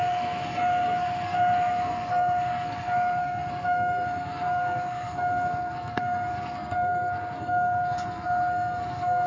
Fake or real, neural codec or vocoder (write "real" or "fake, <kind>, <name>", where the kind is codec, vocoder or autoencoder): fake, codec, SNAC